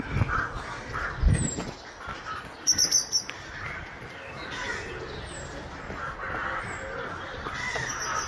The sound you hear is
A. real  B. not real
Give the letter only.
A